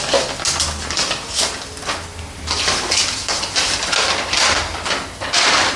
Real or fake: real